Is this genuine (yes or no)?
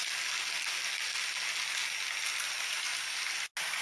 yes